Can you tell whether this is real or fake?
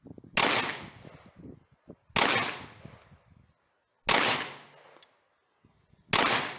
real